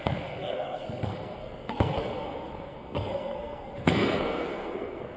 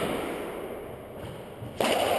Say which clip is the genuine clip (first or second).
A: second